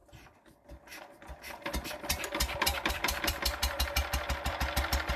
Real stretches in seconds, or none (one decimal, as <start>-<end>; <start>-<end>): 4.0-4.5